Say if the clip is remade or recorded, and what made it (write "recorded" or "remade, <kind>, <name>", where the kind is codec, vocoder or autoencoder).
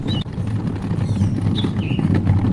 recorded